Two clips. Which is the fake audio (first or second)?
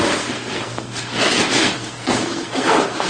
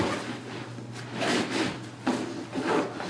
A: first